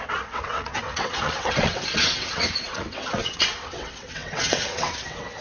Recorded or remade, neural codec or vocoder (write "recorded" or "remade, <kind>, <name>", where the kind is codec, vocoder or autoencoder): remade, vocoder, WaveNeXt